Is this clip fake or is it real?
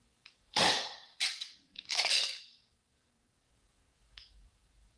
fake